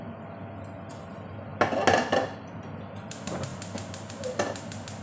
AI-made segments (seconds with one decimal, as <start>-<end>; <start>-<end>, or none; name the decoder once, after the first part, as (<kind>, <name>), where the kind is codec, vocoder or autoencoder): none